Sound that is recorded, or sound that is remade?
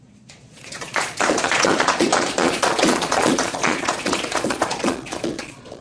remade